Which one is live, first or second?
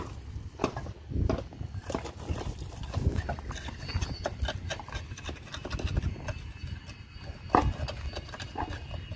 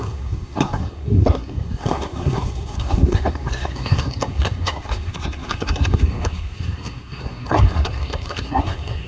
first